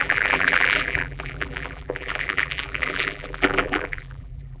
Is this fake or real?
fake